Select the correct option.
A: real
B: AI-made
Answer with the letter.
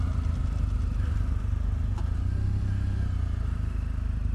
A